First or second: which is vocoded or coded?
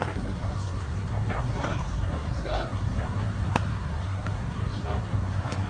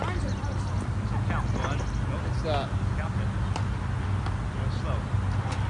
first